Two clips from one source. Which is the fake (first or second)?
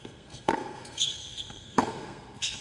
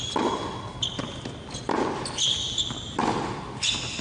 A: first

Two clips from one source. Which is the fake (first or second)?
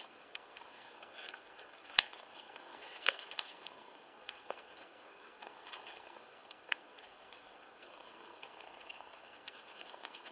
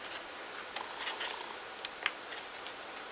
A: first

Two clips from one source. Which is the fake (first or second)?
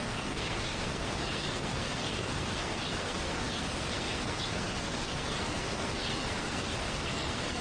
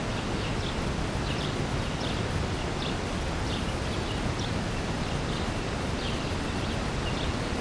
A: first